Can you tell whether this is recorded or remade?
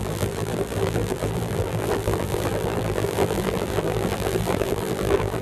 remade